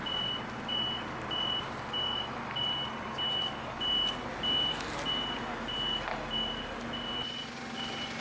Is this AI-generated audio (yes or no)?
no